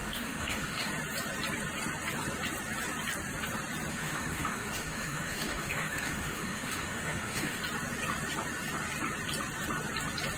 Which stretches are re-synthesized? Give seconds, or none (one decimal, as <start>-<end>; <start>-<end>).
0.0-0.9; 3.9-7.6